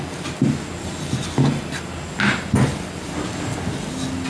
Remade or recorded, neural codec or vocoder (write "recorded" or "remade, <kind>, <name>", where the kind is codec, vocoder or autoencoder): recorded